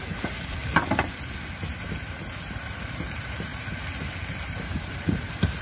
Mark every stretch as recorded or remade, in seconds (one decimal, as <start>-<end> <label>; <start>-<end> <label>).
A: 0.0-0.6 remade; 0.6-1.9 recorded; 1.9-3.5 remade; 3.5-4.9 recorded; 4.9-5.6 remade